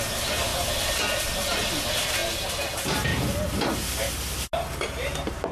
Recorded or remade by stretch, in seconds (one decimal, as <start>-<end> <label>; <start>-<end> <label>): 0.0-0.5 recorded; 0.5-1.8 remade; 1.8-5.5 recorded